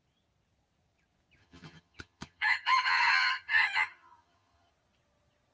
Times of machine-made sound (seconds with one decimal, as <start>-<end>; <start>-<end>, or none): 1.4-4.7